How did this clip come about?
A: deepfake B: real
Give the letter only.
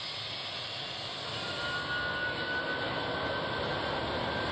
B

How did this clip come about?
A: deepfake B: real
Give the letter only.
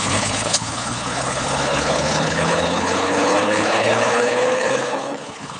A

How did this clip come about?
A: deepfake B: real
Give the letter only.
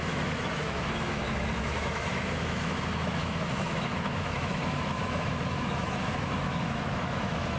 A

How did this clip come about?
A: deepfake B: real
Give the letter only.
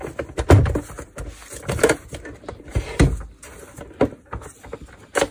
B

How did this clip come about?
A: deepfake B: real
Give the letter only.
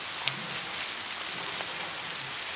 B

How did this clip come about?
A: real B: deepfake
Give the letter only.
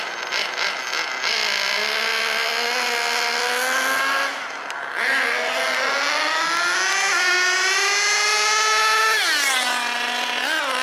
A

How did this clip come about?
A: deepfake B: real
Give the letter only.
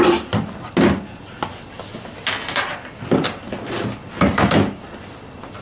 B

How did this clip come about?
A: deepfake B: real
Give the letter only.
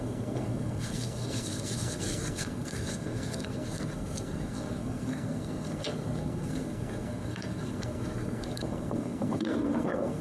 A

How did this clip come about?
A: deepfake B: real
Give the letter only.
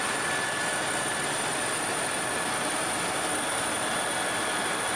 B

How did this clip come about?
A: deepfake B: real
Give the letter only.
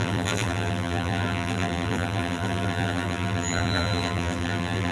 A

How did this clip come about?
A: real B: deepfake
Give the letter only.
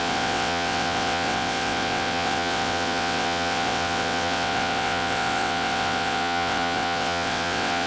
B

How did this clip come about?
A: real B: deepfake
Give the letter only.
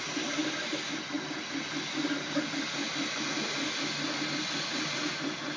A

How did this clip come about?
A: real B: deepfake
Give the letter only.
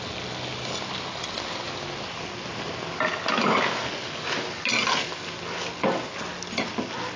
A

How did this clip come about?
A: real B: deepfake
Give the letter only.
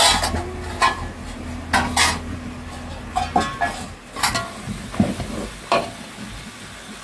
A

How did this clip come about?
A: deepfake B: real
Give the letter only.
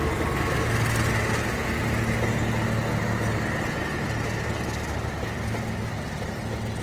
B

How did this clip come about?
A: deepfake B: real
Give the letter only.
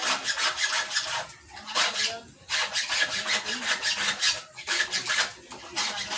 B